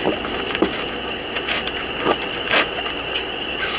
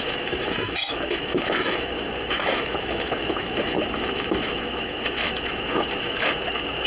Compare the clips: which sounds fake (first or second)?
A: second